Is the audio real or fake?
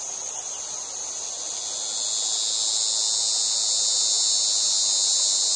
real